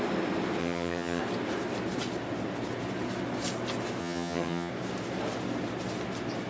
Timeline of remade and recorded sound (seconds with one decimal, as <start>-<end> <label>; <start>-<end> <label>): 0.0-0.6 recorded; 0.6-1.2 remade; 1.2-4.0 recorded; 4.0-4.7 remade; 4.7-6.5 recorded